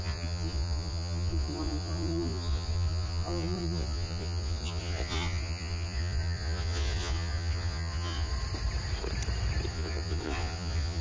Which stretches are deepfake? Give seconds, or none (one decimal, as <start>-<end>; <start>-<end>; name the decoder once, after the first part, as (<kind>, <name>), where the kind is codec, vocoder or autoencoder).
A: 0.0-8.3 (vocoder, Vocos); 9.7-11.0